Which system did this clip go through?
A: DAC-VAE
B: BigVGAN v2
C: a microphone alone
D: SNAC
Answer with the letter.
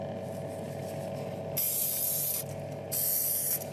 C